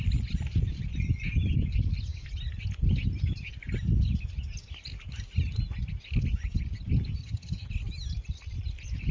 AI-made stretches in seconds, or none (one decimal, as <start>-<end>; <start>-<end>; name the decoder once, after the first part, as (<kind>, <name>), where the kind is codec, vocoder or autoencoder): 7.2-7.7 (vocoder, HiFi-GAN)